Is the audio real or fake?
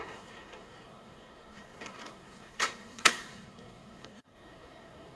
fake